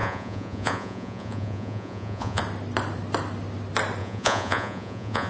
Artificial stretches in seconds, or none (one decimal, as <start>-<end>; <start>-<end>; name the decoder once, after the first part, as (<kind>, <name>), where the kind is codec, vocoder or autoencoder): 0.0-2.4 (vocoder, Vocos); 4.0-5.3